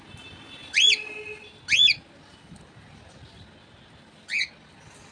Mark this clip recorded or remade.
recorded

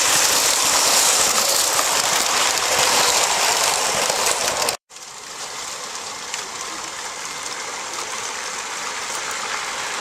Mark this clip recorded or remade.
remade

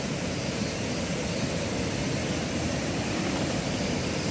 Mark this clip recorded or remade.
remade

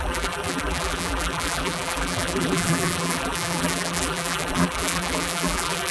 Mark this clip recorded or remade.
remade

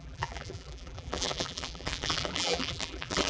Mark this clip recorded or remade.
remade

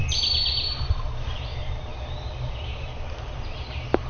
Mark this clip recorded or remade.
remade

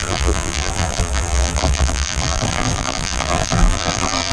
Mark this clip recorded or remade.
remade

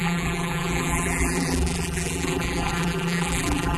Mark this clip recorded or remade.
remade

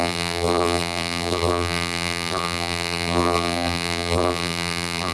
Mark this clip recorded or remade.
remade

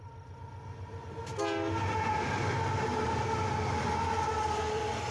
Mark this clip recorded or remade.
recorded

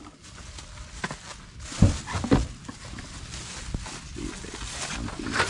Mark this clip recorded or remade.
recorded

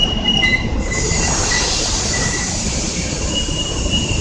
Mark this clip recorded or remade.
remade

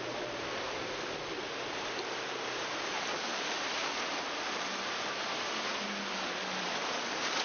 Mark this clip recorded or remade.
remade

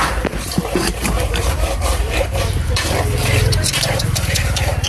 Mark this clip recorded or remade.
remade